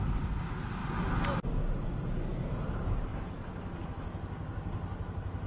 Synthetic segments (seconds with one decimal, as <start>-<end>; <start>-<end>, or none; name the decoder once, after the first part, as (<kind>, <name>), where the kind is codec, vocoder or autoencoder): none